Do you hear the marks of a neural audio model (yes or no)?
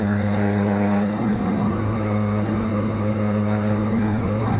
yes